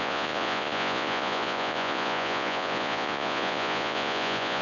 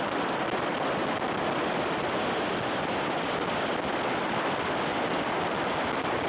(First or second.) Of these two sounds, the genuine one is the second